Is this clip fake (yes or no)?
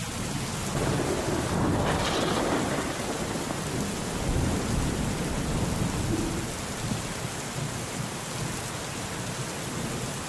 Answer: no